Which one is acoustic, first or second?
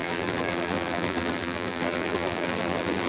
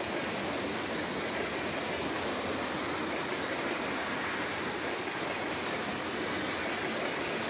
second